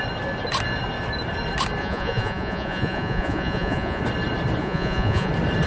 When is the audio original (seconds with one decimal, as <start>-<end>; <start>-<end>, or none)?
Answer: 0.0-1.8; 4.0-4.6; 5.3-5.7